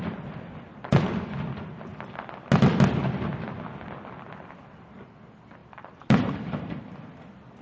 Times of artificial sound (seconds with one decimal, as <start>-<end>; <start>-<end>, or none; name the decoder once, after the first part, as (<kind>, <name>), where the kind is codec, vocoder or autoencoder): 5.6-6.8 (vocoder, BigVGAN v2)